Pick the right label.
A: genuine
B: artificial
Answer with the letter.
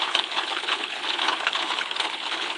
B